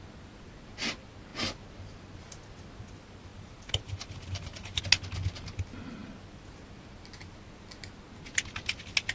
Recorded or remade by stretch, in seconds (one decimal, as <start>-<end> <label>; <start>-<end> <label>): 0.0-3.3 recorded; 3.3-4.8 remade; 4.8-9.1 recorded